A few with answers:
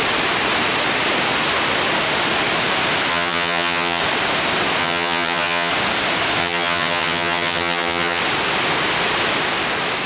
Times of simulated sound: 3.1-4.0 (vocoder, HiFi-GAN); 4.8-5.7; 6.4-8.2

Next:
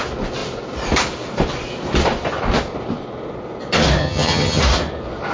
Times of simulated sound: 4.0-4.6 (vocoder, HiFi-GAN)